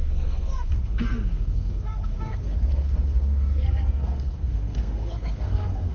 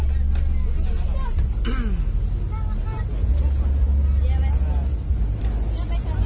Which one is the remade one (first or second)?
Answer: first